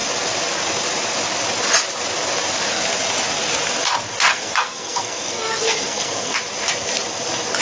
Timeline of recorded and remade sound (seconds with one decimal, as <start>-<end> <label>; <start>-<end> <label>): 0.0-4.3 recorded; 4.3-6.4 remade; 6.4-7.6 recorded